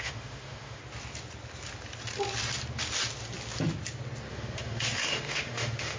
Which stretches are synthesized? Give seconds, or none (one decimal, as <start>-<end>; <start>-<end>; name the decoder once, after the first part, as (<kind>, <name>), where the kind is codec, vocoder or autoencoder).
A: 0.0-0.8 (autoencoder, DAC-VAE); 4.3-6.0